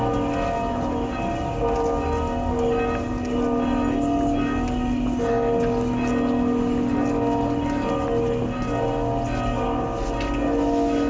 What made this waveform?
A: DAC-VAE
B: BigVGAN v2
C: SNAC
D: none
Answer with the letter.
D